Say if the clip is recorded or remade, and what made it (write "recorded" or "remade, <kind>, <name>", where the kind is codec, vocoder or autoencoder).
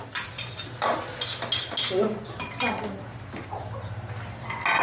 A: recorded